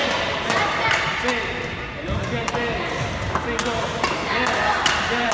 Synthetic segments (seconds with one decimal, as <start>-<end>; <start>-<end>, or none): 0.0-0.8